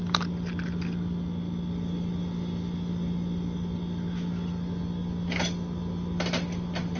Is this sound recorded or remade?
recorded